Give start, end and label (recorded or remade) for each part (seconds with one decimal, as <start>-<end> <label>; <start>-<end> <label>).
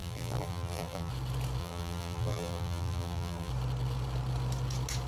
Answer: 0.0-1.1 remade; 1.1-1.6 recorded; 1.6-3.5 remade; 3.5-5.1 recorded